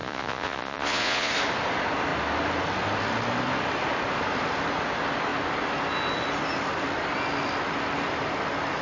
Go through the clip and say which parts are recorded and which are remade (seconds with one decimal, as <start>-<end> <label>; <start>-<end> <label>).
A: 0.0-1.3 remade; 1.3-8.8 recorded